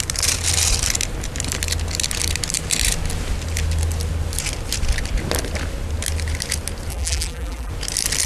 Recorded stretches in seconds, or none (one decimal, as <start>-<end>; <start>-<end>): 0.0-6.9; 7.7-8.3